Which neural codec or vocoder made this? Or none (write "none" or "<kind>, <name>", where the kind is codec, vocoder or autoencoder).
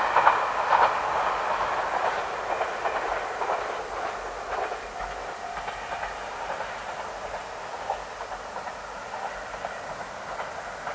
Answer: none